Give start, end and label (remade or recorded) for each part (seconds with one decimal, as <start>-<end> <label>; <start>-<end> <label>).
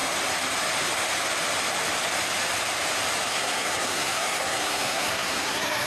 0.0-3.3 recorded; 3.3-5.9 remade